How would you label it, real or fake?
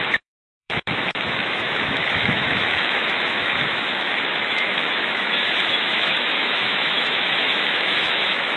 fake